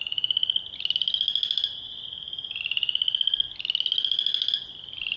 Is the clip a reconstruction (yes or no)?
no